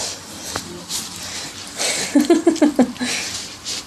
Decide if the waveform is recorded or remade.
recorded